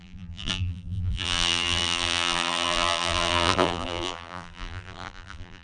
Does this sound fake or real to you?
fake